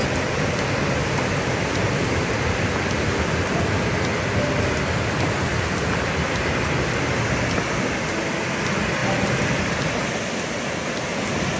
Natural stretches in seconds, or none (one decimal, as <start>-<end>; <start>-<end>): 0.0-1.0; 3.1-11.6